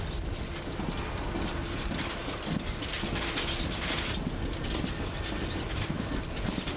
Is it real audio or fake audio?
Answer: real